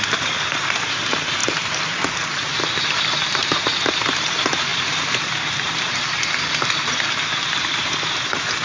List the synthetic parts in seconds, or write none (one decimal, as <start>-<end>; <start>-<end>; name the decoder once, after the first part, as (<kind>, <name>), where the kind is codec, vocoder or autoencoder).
0.0-1.4 (vocoder, BigVGAN v2); 2.8-8.6

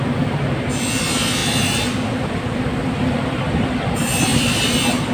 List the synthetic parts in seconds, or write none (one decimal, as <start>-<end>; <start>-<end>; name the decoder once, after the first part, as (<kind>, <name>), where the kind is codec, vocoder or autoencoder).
1.4-3.9 (vocoder, BigVGAN v2); 4.3-5.1

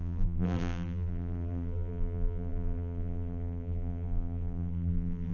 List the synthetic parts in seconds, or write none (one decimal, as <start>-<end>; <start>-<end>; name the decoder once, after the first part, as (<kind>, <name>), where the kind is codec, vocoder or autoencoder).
0.0-5.3 (vocoder, BigVGAN v2)

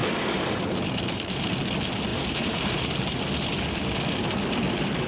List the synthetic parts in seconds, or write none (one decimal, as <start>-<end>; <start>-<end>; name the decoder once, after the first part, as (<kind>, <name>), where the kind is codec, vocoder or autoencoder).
0.0-1.5 (vocoder, BigVGAN v2); 2.1-2.9

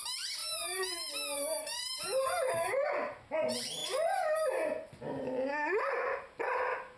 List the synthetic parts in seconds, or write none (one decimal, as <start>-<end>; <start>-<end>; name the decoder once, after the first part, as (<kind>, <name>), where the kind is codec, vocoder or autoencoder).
0.4-2.5 (vocoder, BigVGAN v2)

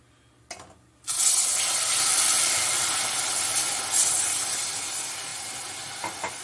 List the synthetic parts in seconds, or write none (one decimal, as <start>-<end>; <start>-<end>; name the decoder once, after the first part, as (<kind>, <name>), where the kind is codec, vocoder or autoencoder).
2.1-3.1 (vocoder, BigVGAN v2)